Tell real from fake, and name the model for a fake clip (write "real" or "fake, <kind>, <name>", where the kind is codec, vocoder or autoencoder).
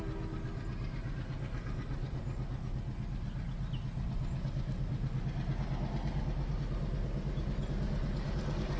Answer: real